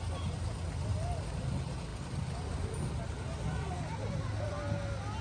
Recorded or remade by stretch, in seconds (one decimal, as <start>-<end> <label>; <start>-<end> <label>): 0.0-5.2 recorded